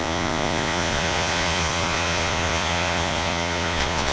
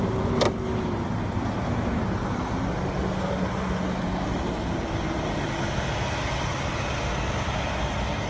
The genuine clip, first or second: second